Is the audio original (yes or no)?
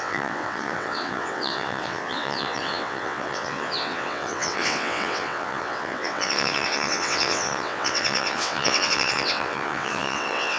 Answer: no